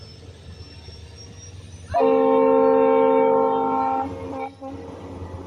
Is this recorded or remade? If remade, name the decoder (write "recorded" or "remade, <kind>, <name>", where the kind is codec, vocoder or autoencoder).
recorded